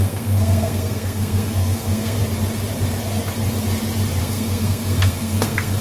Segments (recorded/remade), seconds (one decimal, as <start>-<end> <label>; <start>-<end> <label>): 0.0-2.2 remade; 2.2-4.2 recorded; 4.2-5.8 remade